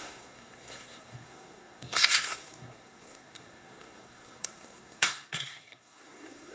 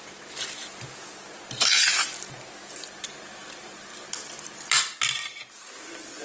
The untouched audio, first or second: second